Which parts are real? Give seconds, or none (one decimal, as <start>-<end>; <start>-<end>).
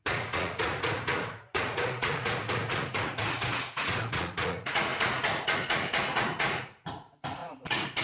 none